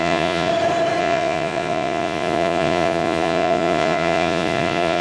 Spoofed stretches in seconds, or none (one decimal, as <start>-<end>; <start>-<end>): 0.0-0.5; 1.0-5.0